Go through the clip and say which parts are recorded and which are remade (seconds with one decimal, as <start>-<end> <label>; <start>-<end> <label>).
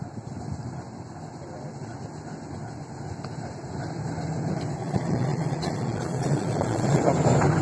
0.0-4.8 recorded; 4.8-7.0 remade; 7.0-7.6 recorded